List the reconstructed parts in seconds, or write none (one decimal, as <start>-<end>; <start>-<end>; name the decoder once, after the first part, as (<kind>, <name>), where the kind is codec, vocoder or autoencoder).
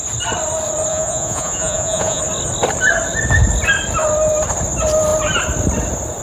0.9-2.2 (vocoder, Vocos)